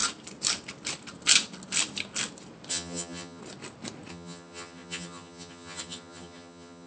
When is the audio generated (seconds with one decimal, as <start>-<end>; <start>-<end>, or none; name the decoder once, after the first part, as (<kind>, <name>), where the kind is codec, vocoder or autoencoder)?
2.7-3.4 (vocoder, HiFi-GAN); 4.1-6.9

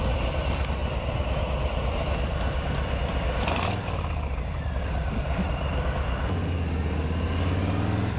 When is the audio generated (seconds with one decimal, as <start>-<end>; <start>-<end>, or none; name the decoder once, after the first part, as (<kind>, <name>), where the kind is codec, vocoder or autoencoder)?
none

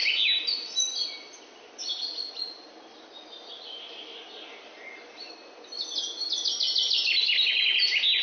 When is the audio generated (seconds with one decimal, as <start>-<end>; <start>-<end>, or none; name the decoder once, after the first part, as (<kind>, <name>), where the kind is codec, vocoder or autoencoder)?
none

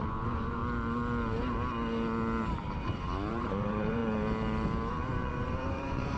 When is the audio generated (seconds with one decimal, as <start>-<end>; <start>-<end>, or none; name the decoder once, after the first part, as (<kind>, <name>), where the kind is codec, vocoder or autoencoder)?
0.0-0.6 (vocoder, Vocos); 3.3-4.0; 4.9-6.2